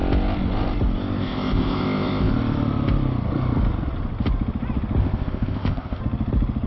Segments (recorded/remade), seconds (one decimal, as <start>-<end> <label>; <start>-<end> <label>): 0.0-1.2 recorded; 1.2-2.3 remade; 2.3-5.0 recorded; 5.0-6.0 remade; 6.0-6.7 recorded